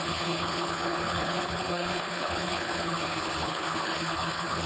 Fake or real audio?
fake